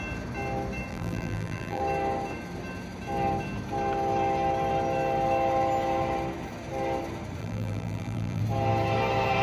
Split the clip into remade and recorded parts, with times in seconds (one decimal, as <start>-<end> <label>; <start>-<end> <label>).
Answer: 0.0-0.9 recorded; 0.9-1.8 remade; 1.8-7.4 recorded; 7.4-8.4 remade; 8.4-9.4 recorded